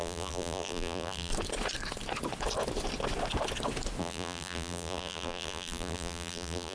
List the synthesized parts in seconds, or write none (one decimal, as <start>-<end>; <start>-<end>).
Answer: 0.0-1.3; 4.0-6.7